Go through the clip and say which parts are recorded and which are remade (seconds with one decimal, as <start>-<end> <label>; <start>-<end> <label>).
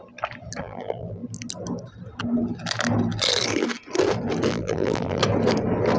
0.0-0.6 recorded; 0.6-1.2 remade; 1.2-4.5 recorded; 4.5-5.2 remade; 5.2-6.0 recorded